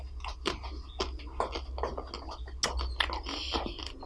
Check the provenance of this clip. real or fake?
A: real